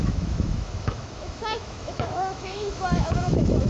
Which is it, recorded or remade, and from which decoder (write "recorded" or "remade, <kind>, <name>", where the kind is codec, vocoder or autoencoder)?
remade, autoencoder, DAC-VAE